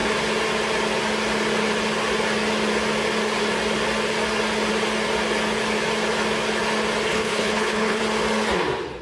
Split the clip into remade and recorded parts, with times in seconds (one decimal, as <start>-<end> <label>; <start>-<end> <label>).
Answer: 0.0-7.1 recorded; 7.1-8.0 remade; 8.0-9.0 recorded

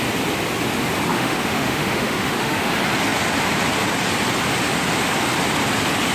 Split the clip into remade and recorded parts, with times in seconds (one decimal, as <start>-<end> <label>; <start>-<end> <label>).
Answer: 0.0-1.1 recorded; 1.1-2.7 remade; 2.7-6.1 recorded

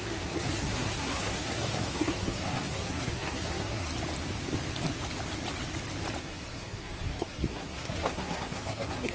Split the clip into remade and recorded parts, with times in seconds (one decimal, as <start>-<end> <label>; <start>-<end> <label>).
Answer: 0.0-3.9 remade; 3.9-6.2 recorded; 6.2-9.1 remade